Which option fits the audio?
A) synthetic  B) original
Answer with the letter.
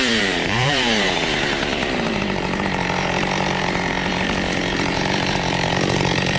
A